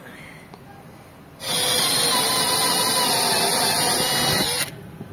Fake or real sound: real